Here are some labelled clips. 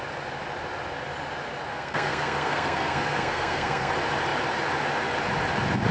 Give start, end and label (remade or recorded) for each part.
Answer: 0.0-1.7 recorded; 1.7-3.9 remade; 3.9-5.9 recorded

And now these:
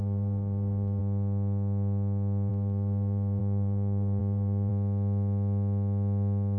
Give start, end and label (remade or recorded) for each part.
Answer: 0.0-1.0 remade; 1.0-2.5 recorded; 2.5-4.7 remade; 4.7-6.6 recorded